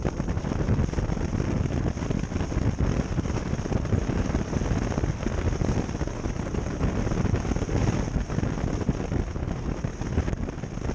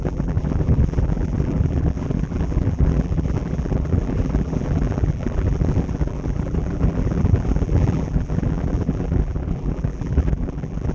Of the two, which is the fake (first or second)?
second